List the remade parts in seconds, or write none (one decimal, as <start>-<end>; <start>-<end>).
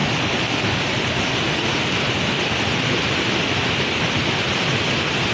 none